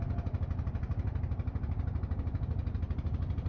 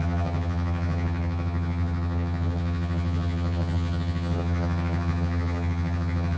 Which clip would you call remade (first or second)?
second